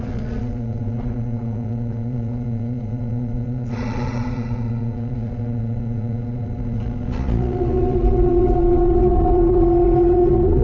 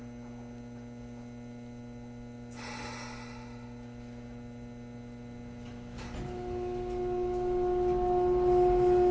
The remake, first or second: first